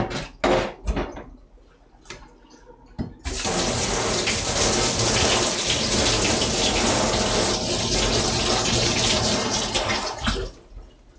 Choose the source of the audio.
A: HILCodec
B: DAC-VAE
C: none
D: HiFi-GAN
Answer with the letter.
C